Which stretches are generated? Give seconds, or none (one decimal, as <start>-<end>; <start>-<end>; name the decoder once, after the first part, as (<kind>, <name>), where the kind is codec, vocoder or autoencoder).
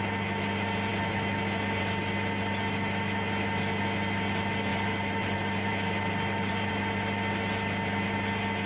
4.7-6.7 (vocoder, BigVGAN v2)